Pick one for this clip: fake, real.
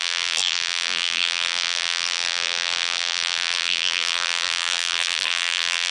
fake